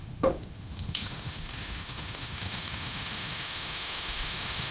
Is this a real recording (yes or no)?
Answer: no